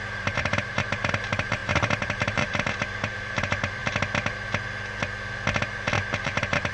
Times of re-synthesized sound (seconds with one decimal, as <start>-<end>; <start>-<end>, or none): 0.0-3.8; 6.2-6.7